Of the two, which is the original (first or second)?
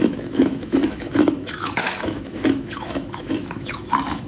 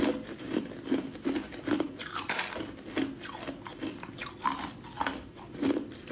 second